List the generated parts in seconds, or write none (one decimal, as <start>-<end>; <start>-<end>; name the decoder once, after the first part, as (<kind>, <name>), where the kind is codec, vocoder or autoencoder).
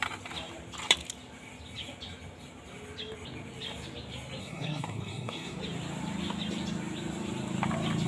4.4-5.6 (codec, SNAC)